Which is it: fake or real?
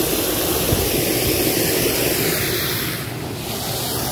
real